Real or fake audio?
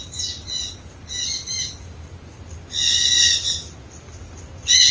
real